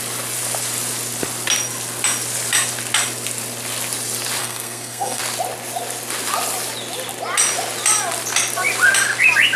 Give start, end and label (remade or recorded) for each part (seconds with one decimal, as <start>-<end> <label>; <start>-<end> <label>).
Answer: 0.0-4.4 recorded; 4.4-5.2 remade; 5.2-9.6 recorded